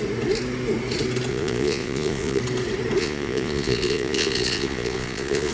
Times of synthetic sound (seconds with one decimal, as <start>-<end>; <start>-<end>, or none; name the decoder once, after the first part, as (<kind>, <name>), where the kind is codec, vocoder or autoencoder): 1.3-2.4 (vocoder, Vocos); 3.0-5.5